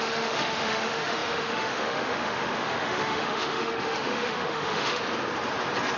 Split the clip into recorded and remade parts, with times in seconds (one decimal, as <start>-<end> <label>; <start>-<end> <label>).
0.0-5.0 remade; 5.0-6.0 recorded